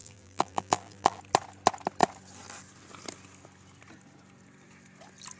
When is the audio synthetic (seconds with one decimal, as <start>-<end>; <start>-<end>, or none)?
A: 0.0-1.2